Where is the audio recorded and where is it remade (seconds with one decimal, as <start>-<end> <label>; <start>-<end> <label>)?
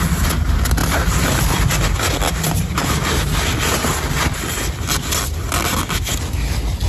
0.0-6.9 recorded